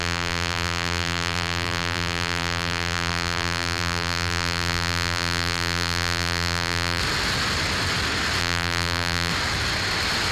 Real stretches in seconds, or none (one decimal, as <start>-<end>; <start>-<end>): 7.0-8.4; 9.3-10.3